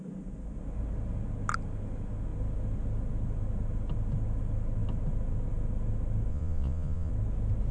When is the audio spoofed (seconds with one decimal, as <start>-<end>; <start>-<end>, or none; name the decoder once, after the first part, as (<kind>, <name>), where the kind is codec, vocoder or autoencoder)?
6.3-7.1 (vocoder, Vocos)